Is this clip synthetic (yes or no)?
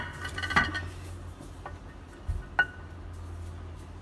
no